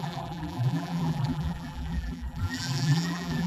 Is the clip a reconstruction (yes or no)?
yes